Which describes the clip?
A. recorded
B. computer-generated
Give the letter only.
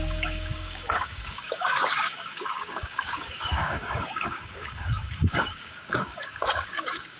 B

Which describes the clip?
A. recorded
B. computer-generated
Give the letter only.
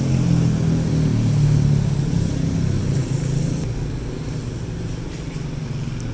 A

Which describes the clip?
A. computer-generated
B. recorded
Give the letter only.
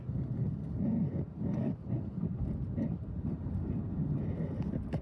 B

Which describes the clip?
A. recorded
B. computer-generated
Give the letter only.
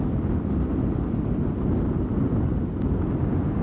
A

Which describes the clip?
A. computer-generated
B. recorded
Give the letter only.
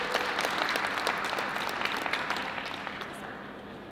B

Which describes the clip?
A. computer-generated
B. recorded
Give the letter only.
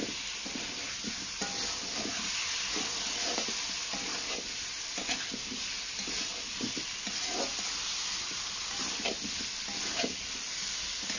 B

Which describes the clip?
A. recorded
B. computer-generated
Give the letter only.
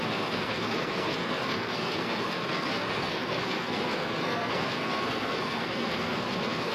B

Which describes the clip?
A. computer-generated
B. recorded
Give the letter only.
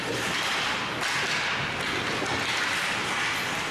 B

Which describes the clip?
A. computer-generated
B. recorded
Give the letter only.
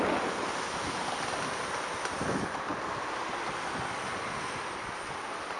B